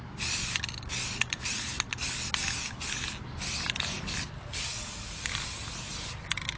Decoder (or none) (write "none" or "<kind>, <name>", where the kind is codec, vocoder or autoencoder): none